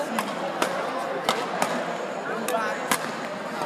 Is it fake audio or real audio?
real